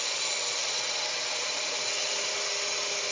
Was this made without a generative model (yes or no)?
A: yes